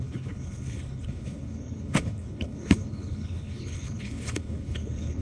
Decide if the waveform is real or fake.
fake